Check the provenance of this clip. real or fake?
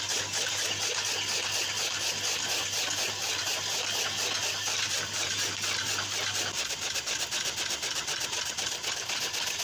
fake